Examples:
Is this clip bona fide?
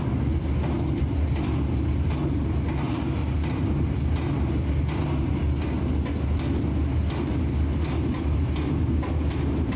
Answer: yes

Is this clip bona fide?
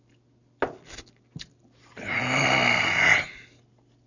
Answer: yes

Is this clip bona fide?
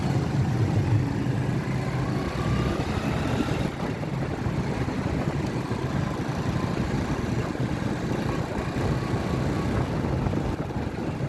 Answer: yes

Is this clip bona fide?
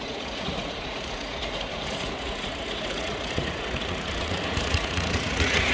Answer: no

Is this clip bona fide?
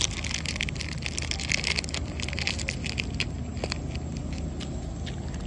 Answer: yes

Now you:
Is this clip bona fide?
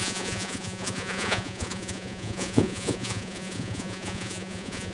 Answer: no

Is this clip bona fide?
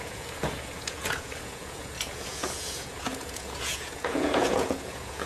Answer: no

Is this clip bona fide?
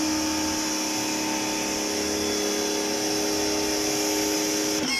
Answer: yes